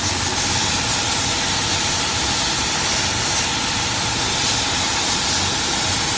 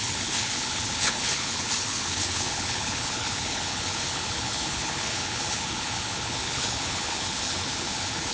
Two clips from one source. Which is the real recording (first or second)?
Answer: first